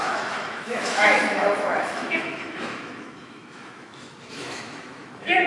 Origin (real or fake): fake